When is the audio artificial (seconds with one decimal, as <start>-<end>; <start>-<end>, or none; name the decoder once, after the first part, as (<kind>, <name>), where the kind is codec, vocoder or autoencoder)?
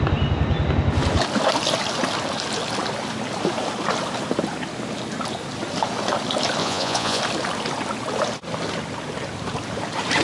6.6-7.2 (vocoder, Vocos)